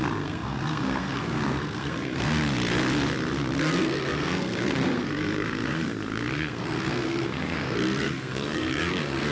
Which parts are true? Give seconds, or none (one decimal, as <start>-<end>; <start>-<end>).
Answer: 2.4-3.6

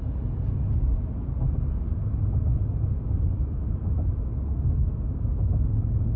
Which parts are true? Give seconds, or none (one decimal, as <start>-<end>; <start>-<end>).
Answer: 0.0-6.2

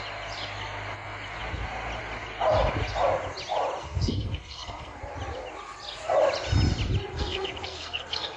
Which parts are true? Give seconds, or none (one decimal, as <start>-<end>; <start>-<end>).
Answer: 0.0-3.8; 5.0-7.1

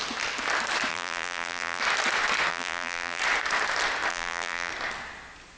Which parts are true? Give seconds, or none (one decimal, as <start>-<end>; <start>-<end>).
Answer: 0.0-0.9; 1.8-2.5; 3.2-4.1; 4.7-5.6

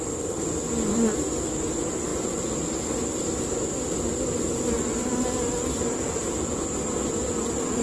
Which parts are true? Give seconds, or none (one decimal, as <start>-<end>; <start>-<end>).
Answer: 2.1-4.7

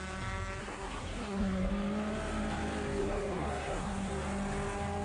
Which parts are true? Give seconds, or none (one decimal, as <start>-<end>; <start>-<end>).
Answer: 0.0-0.6; 1.7-3.0; 4.1-5.0

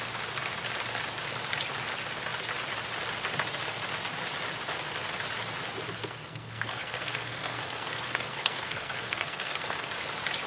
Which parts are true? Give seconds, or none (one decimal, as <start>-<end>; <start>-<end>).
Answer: 0.0-6.0; 9.9-10.5

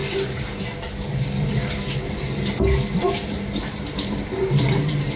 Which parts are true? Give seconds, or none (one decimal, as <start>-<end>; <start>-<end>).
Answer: 0.0-3.1